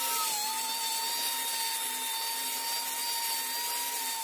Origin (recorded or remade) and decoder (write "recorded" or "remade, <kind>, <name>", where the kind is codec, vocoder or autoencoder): recorded